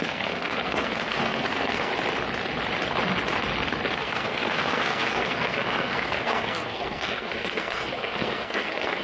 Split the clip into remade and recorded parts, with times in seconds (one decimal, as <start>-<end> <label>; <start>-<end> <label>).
0.0-1.9 remade; 1.9-3.9 recorded; 3.9-9.0 remade